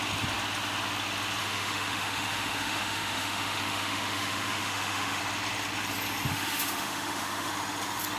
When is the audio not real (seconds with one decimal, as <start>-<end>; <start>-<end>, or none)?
1.4-5.2; 6.3-7.5